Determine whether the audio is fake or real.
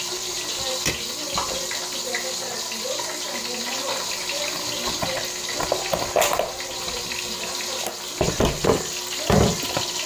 real